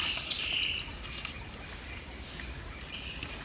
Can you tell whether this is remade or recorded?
recorded